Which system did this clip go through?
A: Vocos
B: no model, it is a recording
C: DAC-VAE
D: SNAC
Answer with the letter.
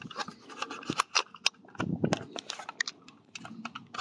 B